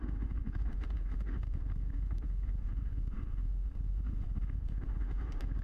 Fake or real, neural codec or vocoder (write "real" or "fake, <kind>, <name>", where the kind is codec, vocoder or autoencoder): fake, autoencoder, DAC-VAE